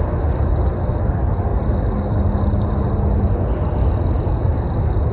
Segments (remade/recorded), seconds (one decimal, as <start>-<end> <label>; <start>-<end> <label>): 0.0-5.1 recorded